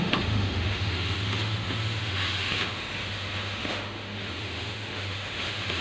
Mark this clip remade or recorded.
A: remade